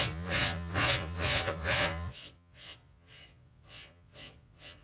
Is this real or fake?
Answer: fake